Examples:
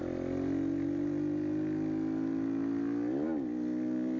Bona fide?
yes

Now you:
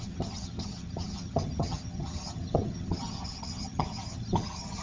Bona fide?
no